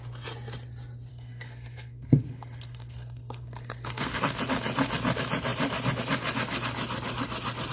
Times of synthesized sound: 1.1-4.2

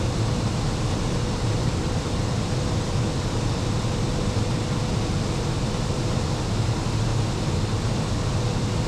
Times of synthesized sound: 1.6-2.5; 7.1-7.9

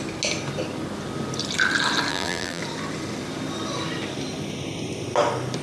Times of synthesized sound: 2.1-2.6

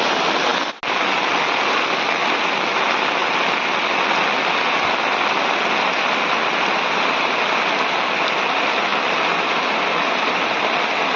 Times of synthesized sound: none

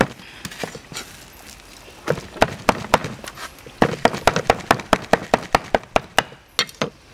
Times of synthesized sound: none